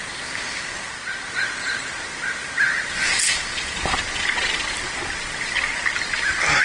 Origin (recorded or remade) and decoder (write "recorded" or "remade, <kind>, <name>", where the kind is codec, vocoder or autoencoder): recorded